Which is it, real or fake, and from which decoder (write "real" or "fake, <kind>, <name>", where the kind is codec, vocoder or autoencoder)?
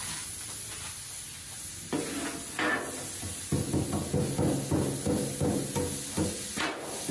real